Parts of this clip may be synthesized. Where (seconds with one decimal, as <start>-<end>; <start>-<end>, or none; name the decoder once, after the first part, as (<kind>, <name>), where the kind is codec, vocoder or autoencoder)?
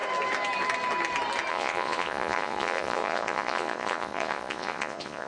1.5-5.3 (vocoder, Vocos)